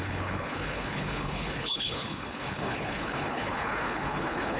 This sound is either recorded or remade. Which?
remade